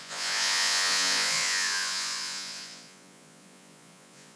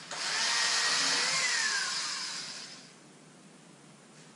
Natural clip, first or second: second